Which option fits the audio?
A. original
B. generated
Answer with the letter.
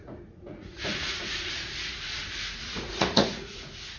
B